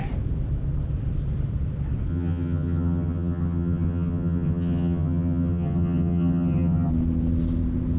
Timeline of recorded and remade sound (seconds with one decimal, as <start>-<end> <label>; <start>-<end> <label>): 0.0-2.1 recorded; 2.1-6.9 remade; 6.9-8.0 recorded